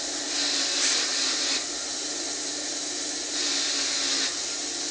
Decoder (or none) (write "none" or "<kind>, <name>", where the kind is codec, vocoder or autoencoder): none